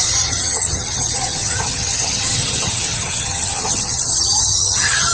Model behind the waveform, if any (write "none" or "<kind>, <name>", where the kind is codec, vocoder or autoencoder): vocoder, HiFi-GAN